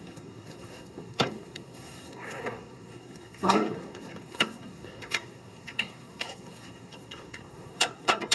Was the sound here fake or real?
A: fake